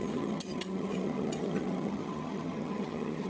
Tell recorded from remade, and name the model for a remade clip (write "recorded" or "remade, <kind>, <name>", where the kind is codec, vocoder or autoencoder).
remade, vocoder, HiFi-GAN